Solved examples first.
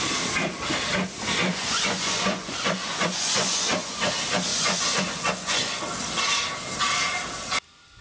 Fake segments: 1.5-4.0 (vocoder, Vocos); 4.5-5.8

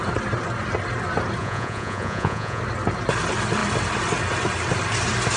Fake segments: 1.4-2.6 (vocoder, Vocos)

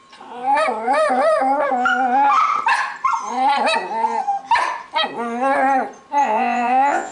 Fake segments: 6.2-7.1 (vocoder, Vocos)

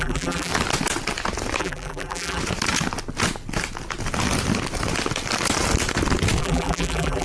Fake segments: 0.0-0.5 (vocoder, BigVGAN v2); 1.6-2.4; 6.4-7.2

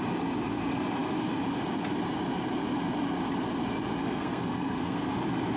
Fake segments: 4.0-5.1 (codec, SNAC)

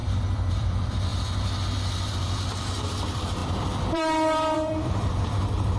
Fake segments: 0.5-1.1 (vocoder, BigVGAN v2); 2.1-5.8

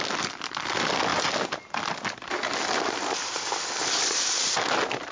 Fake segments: none

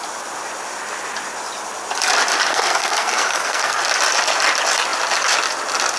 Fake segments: 2.5-3.8 (codec, SNAC)